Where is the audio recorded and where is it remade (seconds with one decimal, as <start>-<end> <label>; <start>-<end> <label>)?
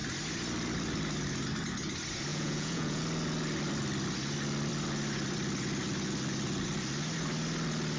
0.0-2.3 recorded; 2.3-3.0 remade; 3.0-8.0 recorded